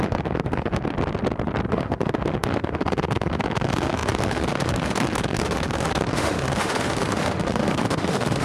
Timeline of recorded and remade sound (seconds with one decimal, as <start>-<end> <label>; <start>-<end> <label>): 0.0-0.8 remade; 0.8-1.7 recorded; 1.7-8.4 remade